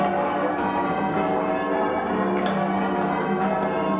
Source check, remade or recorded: recorded